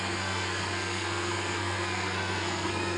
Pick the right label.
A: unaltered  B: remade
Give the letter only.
B